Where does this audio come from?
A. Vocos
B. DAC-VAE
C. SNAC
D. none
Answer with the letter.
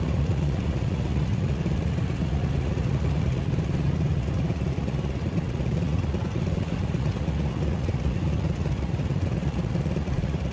A